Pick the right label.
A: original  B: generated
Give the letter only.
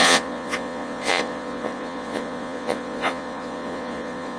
B